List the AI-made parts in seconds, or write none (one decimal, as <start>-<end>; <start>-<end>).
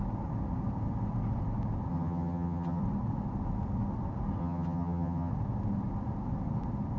1.9-2.8; 4.4-5.3